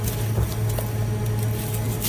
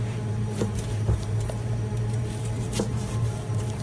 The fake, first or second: second